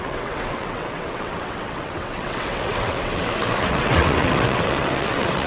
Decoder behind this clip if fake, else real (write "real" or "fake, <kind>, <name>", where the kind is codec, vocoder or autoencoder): fake, vocoder, WaveNeXt